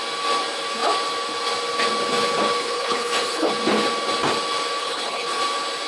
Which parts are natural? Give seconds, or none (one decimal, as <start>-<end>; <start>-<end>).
0.0-2.6; 3.5-4.8; 5.4-5.9